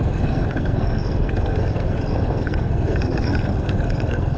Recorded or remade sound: remade